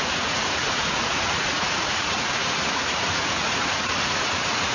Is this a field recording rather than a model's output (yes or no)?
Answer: no